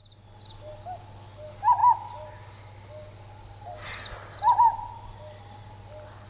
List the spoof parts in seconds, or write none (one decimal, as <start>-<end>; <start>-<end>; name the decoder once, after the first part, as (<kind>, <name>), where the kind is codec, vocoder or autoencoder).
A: none